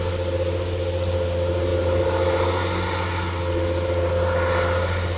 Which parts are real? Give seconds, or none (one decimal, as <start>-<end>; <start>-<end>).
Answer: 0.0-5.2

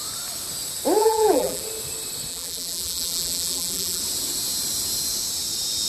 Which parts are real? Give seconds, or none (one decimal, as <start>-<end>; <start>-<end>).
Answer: 0.0-1.0; 1.6-2.3; 4.0-5.9

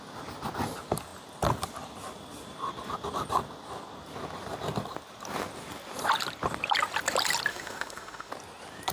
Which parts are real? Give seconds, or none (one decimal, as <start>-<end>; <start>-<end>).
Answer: 0.0-7.5; 8.3-8.9

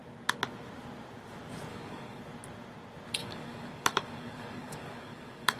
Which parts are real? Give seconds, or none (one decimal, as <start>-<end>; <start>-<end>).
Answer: 0.0-1.7; 2.2-3.2

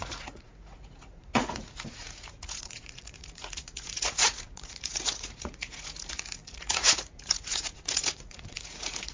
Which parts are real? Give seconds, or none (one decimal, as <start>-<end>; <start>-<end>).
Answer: none